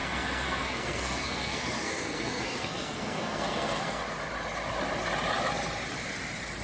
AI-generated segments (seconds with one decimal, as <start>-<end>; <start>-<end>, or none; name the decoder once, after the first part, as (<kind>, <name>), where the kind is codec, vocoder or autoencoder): 0.0-4.0 (codec, SNAC)